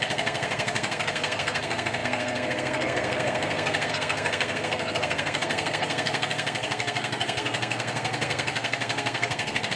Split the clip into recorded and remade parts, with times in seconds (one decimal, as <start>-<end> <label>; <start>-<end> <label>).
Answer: 0.0-9.8 remade